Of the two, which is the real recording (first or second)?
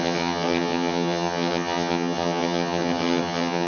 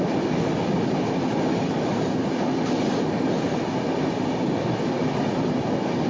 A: second